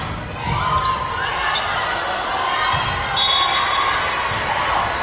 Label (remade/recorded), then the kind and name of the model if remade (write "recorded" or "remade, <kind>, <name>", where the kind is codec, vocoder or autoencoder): recorded